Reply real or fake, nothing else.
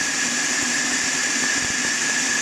real